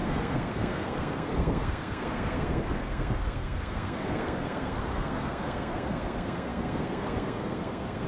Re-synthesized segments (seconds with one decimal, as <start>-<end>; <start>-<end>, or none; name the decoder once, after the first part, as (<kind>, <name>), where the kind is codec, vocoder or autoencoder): 0.0-8.1 (codec, SNAC)